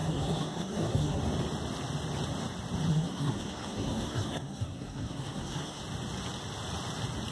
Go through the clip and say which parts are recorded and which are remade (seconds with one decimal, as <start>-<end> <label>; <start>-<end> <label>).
0.0-1.2 remade; 1.2-2.9 recorded; 2.9-5.8 remade; 5.8-7.3 recorded